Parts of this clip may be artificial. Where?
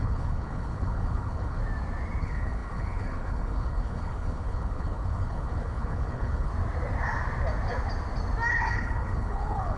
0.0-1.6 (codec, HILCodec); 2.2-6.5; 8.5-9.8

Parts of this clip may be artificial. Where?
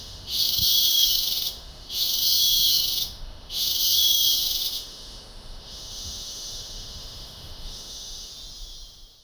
0.0-8.3 (autoencoder, DAC-VAE)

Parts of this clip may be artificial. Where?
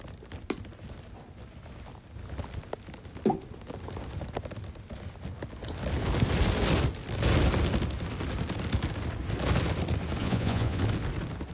10.2-10.8 (vocoder, Vocos)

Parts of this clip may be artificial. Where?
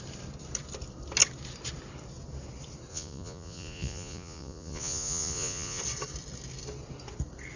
2.9-5.8 (vocoder, Vocos)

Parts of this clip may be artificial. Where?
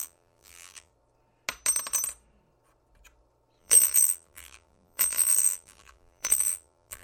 0.0-0.9 (vocoder, BigVGAN v2); 3.6-7.0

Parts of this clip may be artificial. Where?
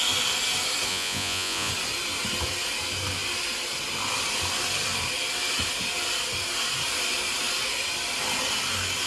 0.9-1.7 (vocoder, Vocos)